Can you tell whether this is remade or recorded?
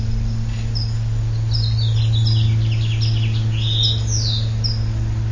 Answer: recorded